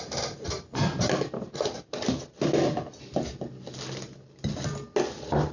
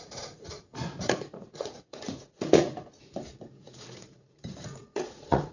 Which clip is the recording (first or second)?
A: first